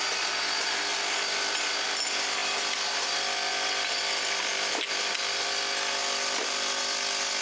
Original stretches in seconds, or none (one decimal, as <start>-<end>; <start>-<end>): 0.0-0.9; 1.6-4.5; 5.1-6.0; 6.8-7.4